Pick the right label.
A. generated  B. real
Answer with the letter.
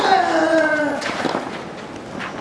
B